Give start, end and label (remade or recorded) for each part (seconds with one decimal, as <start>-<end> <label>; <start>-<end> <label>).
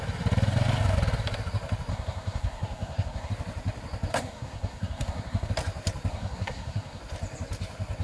0.0-1.9 recorded; 1.9-3.3 remade; 3.3-4.1 recorded; 4.1-5.5 remade; 5.5-6.1 recorded; 6.1-7.0 remade; 7.0-8.0 recorded